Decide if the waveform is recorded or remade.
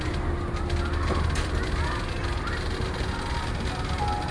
recorded